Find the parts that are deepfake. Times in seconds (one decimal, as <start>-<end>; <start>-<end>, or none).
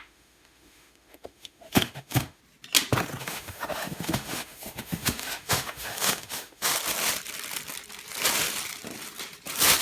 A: 0.0-2.4; 3.2-6.7